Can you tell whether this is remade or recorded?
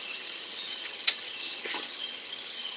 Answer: remade